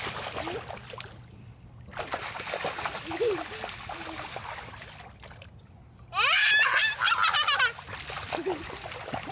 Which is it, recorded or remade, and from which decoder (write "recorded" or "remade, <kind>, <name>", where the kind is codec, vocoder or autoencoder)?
recorded